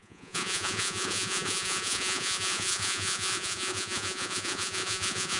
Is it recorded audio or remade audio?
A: remade